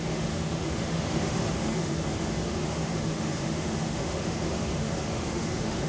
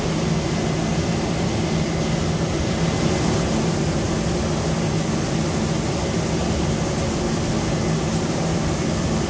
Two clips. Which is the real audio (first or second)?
second